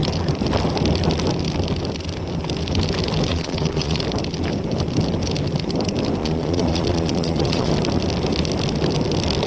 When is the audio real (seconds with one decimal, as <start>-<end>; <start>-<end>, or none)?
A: 0.0-3.3; 4.0-6.2; 7.7-9.5